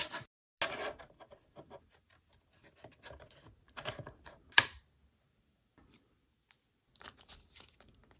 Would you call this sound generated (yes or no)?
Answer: no